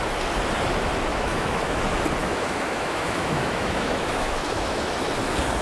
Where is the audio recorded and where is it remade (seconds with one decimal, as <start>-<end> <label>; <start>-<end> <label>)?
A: 0.0-1.1 recorded; 1.1-1.8 remade; 1.8-2.2 recorded; 2.2-4.9 remade; 4.9-5.6 recorded